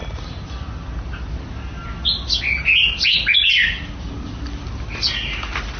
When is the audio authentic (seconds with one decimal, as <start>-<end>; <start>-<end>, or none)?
0.0-5.8